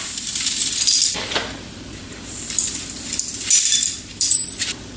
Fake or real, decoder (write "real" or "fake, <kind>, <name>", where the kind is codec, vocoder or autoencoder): fake, vocoder, BigVGAN v2